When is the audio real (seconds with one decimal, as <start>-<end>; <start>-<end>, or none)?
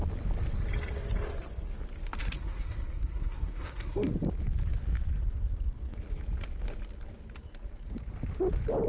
0.0-2.2; 4.1-8.9